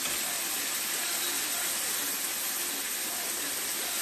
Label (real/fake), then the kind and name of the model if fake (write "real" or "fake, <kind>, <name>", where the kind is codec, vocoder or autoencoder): real